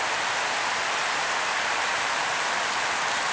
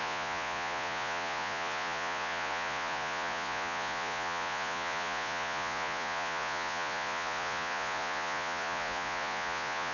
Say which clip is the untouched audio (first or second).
first